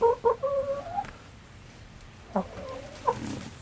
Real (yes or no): yes